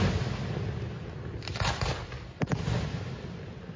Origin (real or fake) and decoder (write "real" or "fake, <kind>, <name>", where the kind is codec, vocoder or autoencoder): real